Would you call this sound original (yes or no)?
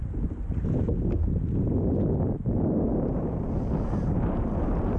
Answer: yes